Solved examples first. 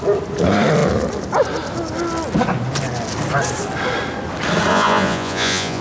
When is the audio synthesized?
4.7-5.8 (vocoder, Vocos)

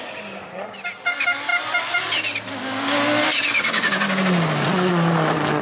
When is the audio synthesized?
none

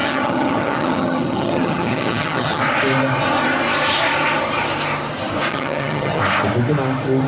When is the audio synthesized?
0.0-2.6 (vocoder, HiFi-GAN); 5.5-6.2

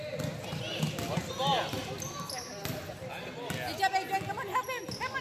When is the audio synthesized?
none

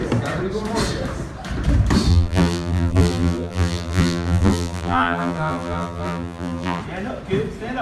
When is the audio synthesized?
2.1-6.8 (vocoder, BigVGAN v2)

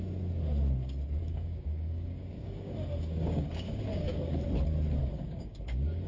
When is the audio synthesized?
1.2-4.4 (codec, DAC); 5.0-6.1

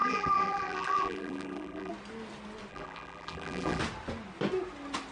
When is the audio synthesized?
0.0-1.9 (vocoder, BigVGAN v2); 2.7-3.8